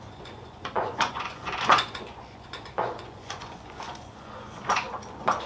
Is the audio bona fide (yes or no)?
no